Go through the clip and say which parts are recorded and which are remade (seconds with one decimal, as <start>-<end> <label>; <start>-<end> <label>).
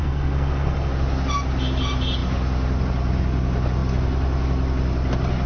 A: 0.0-0.9 remade; 0.9-5.5 recorded